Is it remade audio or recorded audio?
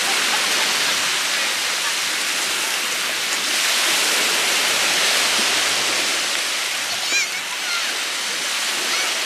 recorded